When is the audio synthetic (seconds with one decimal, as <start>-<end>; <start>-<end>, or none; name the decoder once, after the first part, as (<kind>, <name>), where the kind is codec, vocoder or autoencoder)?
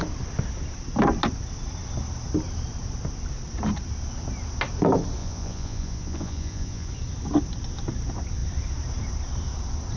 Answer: 5.2-6.9 (vocoder, Vocos)